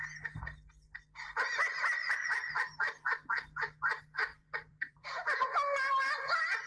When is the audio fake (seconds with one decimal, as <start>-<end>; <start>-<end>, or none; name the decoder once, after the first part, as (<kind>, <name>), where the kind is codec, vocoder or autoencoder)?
1.8-2.7 (vocoder, BigVGAN v2); 4.2-5.4